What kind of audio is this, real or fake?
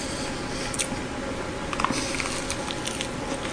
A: real